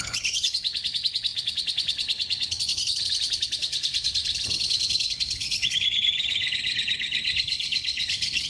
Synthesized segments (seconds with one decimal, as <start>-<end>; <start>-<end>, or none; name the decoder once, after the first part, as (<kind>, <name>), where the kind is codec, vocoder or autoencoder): 0.0-8.5 (codec, HILCodec)